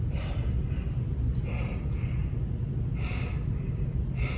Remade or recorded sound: recorded